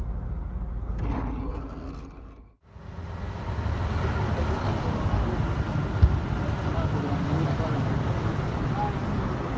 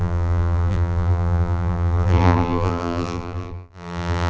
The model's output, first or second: second